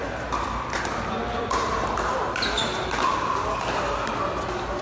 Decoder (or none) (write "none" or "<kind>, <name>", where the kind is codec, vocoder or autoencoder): none